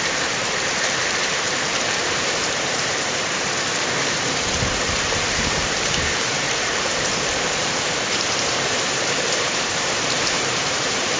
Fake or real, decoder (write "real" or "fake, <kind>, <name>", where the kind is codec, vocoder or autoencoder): fake, vocoder, BigVGAN v2